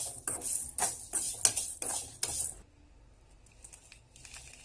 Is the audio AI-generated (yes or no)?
no